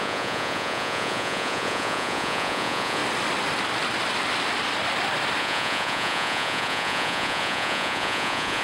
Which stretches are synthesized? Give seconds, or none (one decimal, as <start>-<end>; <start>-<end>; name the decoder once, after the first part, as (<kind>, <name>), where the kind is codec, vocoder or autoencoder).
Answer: 0.0-3.0 (vocoder, Vocos); 5.4-8.6